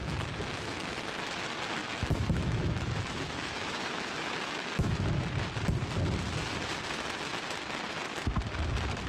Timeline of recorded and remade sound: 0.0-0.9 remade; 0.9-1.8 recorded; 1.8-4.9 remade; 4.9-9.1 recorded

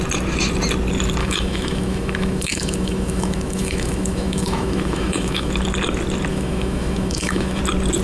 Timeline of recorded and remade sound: 0.0-1.2 recorded; 1.2-5.5 remade; 5.5-6.3 recorded; 6.3-7.6 remade; 7.6-8.0 recorded

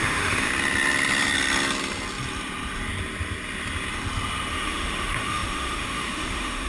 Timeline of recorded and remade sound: 0.0-0.5 remade; 0.5-4.5 recorded; 4.5-6.7 remade